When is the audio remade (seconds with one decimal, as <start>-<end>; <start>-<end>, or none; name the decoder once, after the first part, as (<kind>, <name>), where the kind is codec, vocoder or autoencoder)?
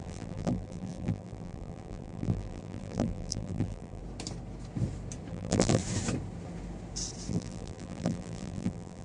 0.0-4.0 (vocoder, BigVGAN v2); 5.3-5.8; 7.3-9.0